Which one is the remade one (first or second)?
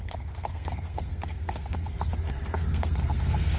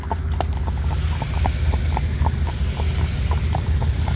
first